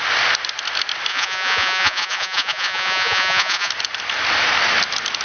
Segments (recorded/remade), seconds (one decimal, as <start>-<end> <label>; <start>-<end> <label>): 0.0-1.1 recorded; 1.1-3.7 remade; 3.7-5.2 recorded